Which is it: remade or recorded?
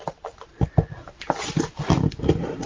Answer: recorded